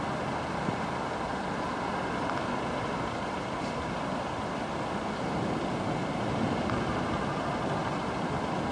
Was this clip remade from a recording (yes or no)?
no